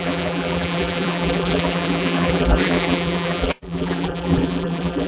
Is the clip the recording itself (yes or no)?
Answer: no